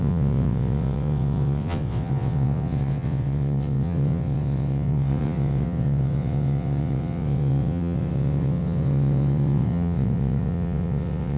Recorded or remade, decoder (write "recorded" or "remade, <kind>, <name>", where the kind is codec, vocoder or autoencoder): remade, vocoder, WaveNeXt